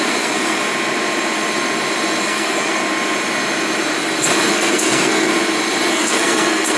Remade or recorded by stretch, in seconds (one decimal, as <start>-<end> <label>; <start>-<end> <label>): 0.0-0.6 remade; 0.6-2.2 recorded; 2.2-2.8 remade; 2.8-4.5 recorded; 4.5-5.3 remade; 5.3-5.9 recorded; 5.9-6.8 remade